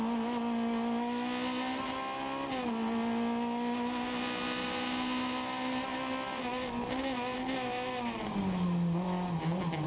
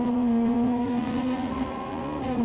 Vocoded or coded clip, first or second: second